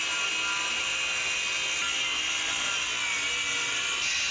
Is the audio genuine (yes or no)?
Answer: yes